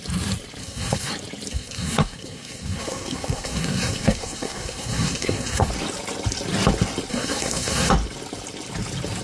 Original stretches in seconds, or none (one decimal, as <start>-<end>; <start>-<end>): 0.0-0.6; 1.1-1.5; 5.7-7.1; 7.9-9.2